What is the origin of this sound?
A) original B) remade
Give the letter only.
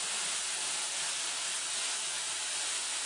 A